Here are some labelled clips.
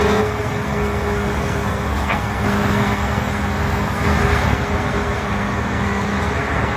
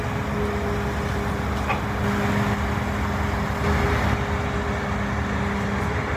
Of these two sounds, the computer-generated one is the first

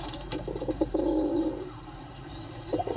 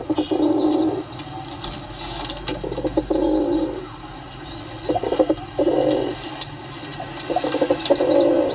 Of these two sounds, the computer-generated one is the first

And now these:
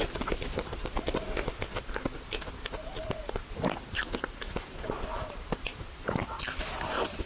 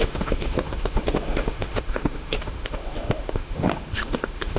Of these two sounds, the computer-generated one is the second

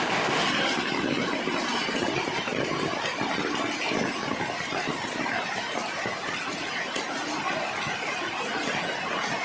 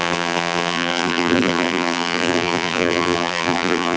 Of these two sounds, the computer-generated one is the second